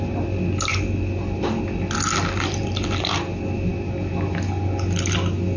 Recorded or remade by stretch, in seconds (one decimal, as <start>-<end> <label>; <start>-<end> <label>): 0.0-5.6 recorded